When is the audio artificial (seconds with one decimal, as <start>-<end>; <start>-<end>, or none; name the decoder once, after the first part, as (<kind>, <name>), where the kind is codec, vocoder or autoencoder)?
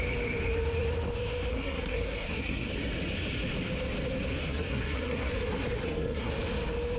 1.5-2.7 (codec, SNAC); 4.4-5.3; 5.8-6.3